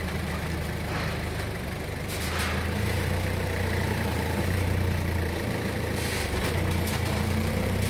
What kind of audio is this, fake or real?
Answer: fake